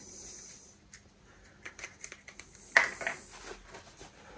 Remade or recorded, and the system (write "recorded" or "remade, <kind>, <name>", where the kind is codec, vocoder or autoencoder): recorded